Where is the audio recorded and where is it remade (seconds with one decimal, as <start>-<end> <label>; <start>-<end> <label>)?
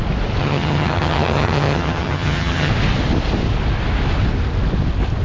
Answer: 0.0-0.4 recorded; 0.4-2.7 remade; 2.7-5.2 recorded